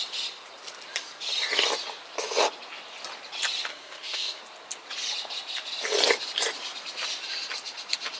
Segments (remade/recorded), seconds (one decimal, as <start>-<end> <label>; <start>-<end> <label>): 0.0-3.7 recorded; 3.7-4.4 remade; 4.4-8.2 recorded